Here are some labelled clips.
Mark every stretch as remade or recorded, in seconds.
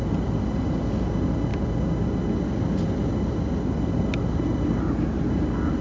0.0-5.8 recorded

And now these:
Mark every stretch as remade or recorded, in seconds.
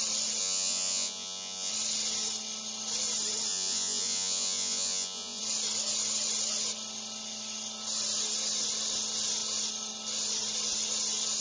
0.0-0.4 recorded; 0.4-1.7 remade; 1.7-3.5 recorded; 3.5-5.4 remade; 5.4-11.4 recorded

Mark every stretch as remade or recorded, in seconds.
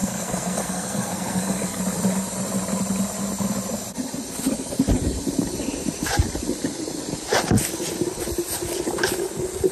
0.0-1.8 remade; 1.8-9.7 recorded